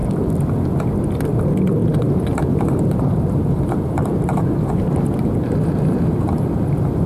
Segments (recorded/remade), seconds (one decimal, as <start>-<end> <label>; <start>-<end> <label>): 0.0-1.8 recorded; 1.8-6.1 remade; 6.1-7.1 recorded

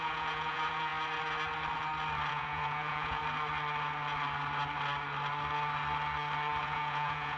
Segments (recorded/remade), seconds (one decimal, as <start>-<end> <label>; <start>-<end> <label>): 0.0-0.9 remade; 0.9-2.3 recorded; 2.3-3.2 remade; 3.2-6.6 recorded; 6.6-7.4 remade

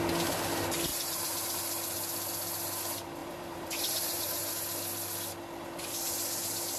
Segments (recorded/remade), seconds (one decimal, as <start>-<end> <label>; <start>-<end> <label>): 0.0-0.9 recorded; 0.9-1.6 remade; 1.6-3.2 recorded; 3.2-4.5 remade; 4.5-6.8 recorded

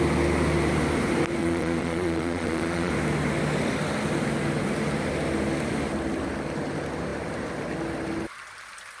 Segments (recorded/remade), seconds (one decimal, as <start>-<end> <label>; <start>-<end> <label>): 0.0-1.4 recorded; 1.4-2.9 remade; 2.9-9.0 recorded

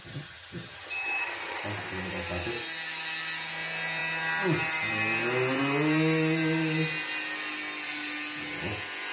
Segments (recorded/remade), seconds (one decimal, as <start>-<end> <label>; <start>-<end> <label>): 0.0-1.6 remade; 1.6-9.1 recorded

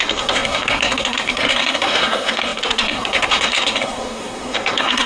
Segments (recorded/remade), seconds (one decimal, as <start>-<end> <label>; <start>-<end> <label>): 0.0-5.1 remade